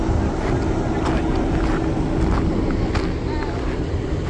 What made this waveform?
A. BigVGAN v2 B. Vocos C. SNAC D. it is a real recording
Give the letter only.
D